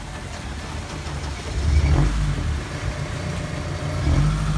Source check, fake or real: real